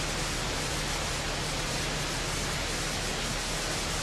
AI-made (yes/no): no